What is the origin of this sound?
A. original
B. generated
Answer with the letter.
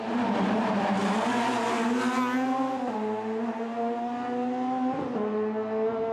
A